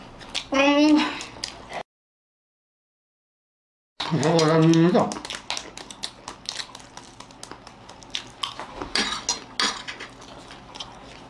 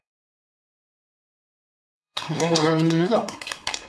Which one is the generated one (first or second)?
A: second